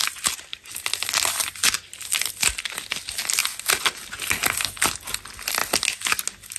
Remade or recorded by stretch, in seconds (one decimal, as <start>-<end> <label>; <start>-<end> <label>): 0.0-6.6 recorded